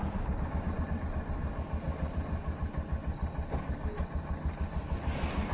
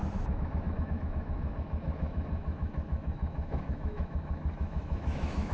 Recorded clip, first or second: first